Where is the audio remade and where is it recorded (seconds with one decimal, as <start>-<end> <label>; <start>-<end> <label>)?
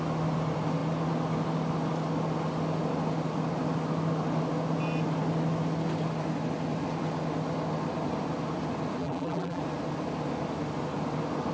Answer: 0.0-9.0 recorded; 9.0-9.6 remade; 9.6-11.5 recorded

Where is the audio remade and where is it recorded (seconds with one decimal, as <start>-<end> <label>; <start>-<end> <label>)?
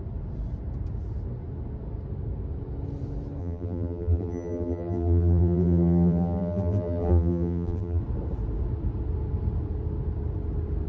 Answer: 0.0-3.4 recorded; 3.4-8.0 remade; 8.0-10.9 recorded